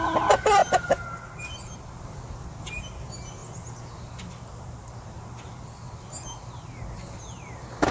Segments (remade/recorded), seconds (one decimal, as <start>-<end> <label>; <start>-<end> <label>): 0.0-7.9 recorded